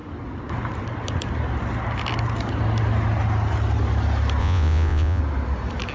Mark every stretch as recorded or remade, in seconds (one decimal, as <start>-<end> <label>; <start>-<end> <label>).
0.0-4.4 recorded; 4.4-5.2 remade; 5.2-5.9 recorded